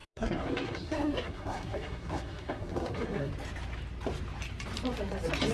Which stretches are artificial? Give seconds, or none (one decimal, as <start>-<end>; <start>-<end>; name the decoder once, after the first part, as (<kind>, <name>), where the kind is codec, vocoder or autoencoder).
0.0-3.3 (codec, SNAC)